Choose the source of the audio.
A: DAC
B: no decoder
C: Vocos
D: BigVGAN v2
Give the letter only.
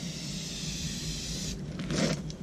B